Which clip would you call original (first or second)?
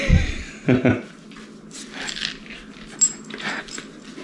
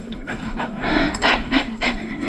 first